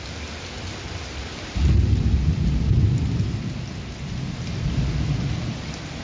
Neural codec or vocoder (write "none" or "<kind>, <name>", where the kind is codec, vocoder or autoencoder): none